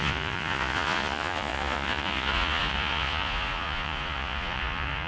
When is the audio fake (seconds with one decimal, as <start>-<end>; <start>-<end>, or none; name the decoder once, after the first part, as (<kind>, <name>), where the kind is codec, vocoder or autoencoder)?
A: 0.0-5.1 (vocoder, Vocos)